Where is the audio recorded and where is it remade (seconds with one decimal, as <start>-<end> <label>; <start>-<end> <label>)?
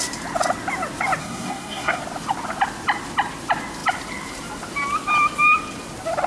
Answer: 0.0-1.2 recorded; 1.2-2.0 remade; 2.0-6.3 recorded